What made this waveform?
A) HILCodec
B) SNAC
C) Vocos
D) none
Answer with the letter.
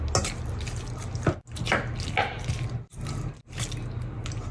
D